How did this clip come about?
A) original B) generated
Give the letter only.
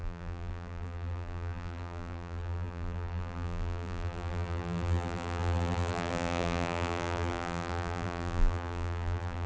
B